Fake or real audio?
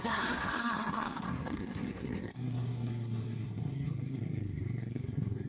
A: fake